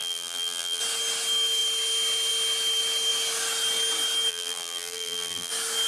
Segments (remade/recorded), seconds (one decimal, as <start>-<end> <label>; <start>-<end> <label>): 0.0-0.8 remade; 0.8-4.3 recorded; 4.3-5.5 remade; 5.5-5.9 recorded